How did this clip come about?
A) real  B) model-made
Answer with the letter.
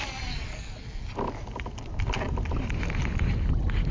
A